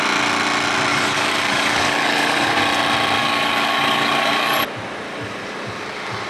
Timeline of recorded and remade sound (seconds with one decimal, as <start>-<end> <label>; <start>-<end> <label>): 0.0-0.9 recorded; 0.9-2.6 remade; 2.6-3.2 recorded; 3.2-4.6 remade; 4.6-6.3 recorded